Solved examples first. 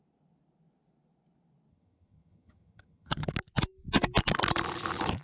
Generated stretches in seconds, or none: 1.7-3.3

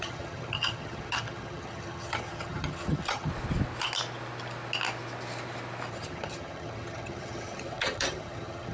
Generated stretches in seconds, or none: 0.0-3.3; 5.9-8.7